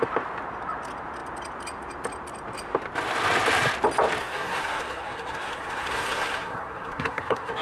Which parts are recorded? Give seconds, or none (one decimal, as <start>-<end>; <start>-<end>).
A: 0.0-4.2